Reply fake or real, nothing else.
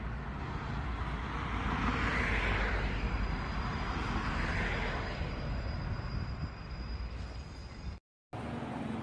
real